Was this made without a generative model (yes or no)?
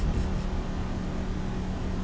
yes